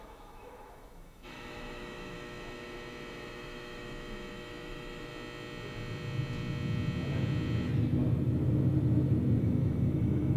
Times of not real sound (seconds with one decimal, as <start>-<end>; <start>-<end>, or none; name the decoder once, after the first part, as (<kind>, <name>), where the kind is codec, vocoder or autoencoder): 0.0-5.1 (autoencoder, DAC-VAE); 9.4-10.4